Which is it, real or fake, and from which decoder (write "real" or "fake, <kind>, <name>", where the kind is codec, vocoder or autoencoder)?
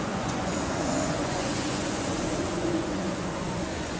fake, vocoder, Vocos